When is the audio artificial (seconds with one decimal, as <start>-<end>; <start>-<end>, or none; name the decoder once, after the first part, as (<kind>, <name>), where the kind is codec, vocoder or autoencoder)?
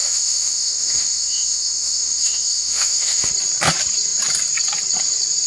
0.0-3.3 (autoencoder, DAC-VAE)